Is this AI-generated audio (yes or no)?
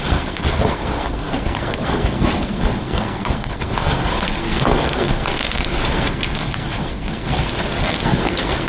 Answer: yes